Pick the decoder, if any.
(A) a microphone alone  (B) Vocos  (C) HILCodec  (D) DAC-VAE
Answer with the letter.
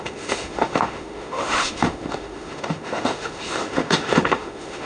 D